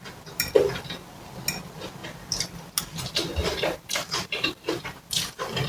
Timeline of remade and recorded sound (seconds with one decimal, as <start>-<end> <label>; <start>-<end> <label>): 0.0-3.4 recorded; 3.4-5.7 remade